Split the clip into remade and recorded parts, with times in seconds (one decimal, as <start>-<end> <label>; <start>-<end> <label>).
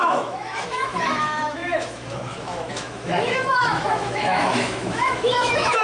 0.0-5.8 remade